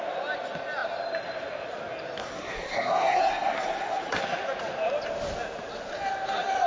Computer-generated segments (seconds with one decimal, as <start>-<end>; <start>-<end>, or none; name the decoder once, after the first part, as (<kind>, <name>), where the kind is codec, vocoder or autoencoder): 2.2-4.2 (codec, SNAC)